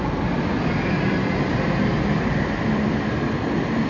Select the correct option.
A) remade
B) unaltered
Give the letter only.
B